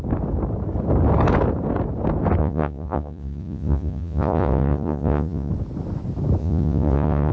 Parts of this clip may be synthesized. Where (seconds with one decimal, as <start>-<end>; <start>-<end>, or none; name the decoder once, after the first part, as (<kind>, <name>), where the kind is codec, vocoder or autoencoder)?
2.4-5.5 (vocoder, Vocos); 6.4-7.3